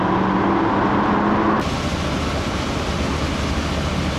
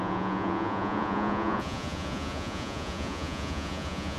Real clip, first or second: first